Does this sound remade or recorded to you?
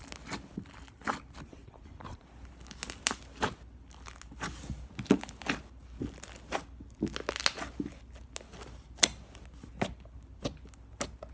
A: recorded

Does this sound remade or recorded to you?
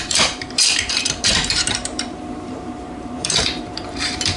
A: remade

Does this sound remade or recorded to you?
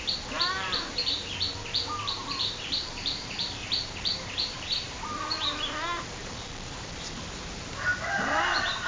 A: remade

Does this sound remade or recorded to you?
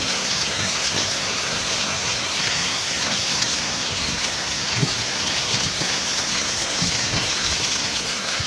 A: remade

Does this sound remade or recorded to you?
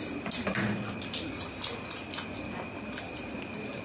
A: recorded